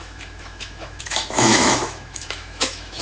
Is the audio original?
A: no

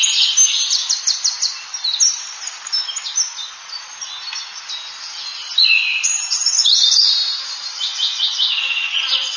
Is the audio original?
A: yes